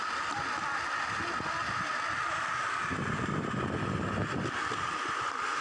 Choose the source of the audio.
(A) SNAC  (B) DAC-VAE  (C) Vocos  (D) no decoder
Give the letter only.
D